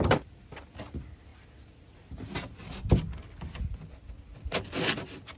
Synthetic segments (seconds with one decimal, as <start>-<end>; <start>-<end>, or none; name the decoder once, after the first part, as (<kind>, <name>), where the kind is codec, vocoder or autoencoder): none